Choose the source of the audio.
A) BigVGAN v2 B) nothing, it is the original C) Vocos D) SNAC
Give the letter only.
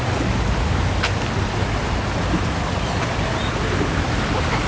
B